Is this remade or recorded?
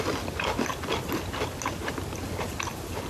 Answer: recorded